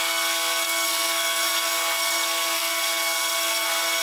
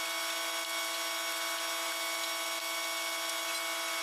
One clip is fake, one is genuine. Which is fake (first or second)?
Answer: first